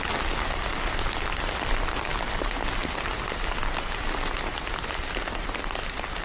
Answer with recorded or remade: recorded